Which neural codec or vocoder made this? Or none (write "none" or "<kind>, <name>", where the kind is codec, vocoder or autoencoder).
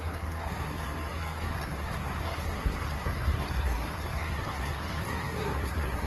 codec, SNAC